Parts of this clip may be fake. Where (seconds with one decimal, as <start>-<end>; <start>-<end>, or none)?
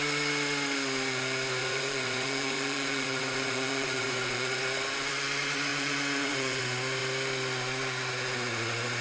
1.6-4.6; 5.7-6.6